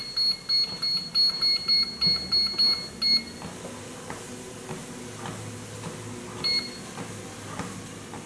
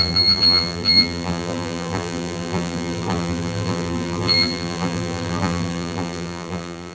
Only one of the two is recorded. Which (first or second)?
first